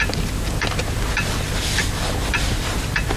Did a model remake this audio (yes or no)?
no